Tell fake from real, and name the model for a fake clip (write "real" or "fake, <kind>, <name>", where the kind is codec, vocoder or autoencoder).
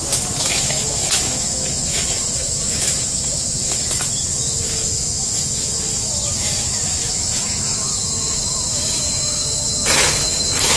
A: fake, autoencoder, DAC-VAE